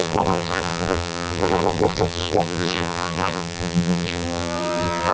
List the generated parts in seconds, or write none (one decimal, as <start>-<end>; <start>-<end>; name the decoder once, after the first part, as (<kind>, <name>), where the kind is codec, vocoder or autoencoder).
0.0-5.1 (vocoder, BigVGAN v2)